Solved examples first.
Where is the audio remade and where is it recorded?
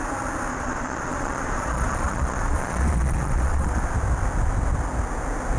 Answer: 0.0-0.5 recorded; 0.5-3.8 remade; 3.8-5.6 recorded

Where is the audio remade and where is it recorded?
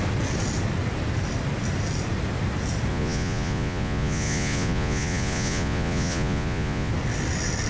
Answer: 0.0-2.9 recorded; 2.9-6.9 remade; 6.9-7.7 recorded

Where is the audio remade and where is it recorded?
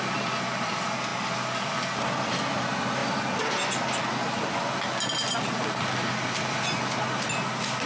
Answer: 0.0-7.9 recorded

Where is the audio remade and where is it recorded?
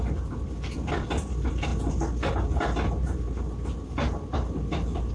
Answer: 0.0-5.1 recorded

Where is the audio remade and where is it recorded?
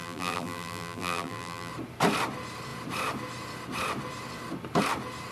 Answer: 0.0-1.7 remade; 1.7-5.3 recorded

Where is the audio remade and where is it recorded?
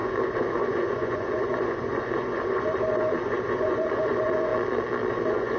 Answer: 0.0-4.5 remade; 4.5-5.1 recorded; 5.1-5.6 remade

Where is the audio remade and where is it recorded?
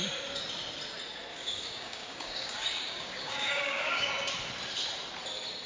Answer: 0.0-1.3 recorded; 1.3-4.1 remade; 4.1-5.7 recorded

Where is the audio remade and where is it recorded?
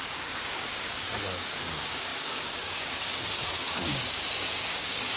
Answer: 0.0-5.2 remade